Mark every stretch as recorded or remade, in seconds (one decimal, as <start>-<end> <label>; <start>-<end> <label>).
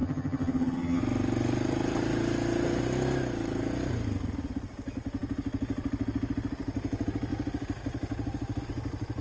0.0-1.0 remade; 1.0-9.2 recorded